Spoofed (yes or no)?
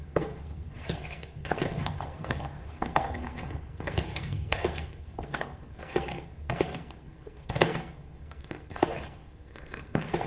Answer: yes